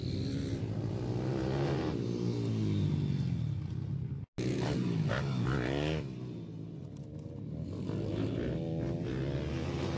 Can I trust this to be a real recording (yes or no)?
yes